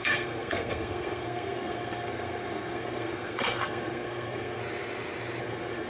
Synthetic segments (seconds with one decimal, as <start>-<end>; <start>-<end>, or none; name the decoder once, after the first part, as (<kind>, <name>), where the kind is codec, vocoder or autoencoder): 0.0-4.6 (codec, SNAC); 5.4-5.9